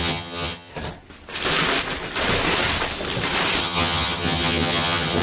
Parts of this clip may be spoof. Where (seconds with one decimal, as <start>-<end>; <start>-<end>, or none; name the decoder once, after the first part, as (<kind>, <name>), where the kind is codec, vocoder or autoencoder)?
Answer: 0.0-0.7 (vocoder, HiFi-GAN); 3.6-5.2